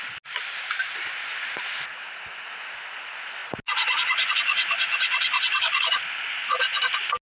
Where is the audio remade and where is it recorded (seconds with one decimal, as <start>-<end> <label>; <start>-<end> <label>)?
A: 0.0-7.2 recorded